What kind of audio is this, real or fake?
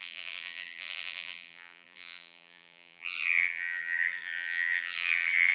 fake